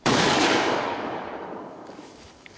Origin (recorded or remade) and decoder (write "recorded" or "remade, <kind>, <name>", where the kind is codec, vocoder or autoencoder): remade, codec, DAC